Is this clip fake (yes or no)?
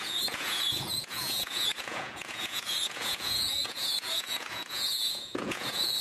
yes